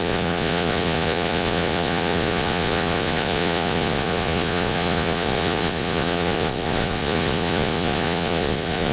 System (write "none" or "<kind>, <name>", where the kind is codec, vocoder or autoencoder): vocoder, Vocos